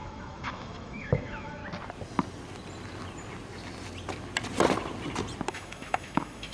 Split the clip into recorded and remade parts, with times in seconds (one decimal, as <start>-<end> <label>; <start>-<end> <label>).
0.0-1.6 remade; 1.6-5.5 recorded; 5.5-6.5 remade